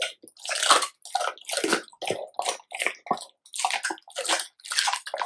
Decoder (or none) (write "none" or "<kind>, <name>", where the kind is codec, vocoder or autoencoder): none